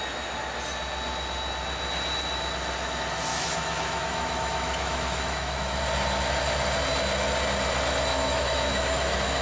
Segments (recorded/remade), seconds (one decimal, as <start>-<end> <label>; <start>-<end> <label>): 0.0-3.3 recorded; 3.3-5.8 remade; 5.8-8.1 recorded; 8.1-9.4 remade